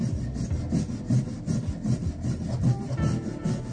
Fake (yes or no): no